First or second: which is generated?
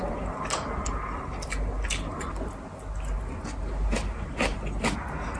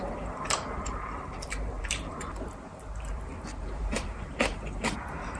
second